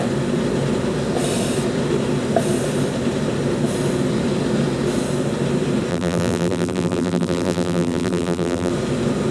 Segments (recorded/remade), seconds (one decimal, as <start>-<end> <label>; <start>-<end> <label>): 0.0-5.9 recorded; 5.9-8.7 remade; 8.7-9.3 recorded